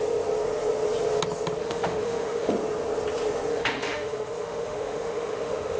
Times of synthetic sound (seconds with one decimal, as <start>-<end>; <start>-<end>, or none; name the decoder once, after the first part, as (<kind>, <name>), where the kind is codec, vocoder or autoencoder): 1.6-2.5 (autoencoder, DAC-VAE); 3.5-5.8